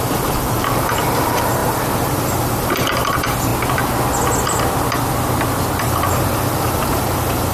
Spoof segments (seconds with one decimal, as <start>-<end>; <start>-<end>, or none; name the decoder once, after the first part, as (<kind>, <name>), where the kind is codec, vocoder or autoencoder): 0.0-3.5 (vocoder, BigVGAN v2); 5.8-7.5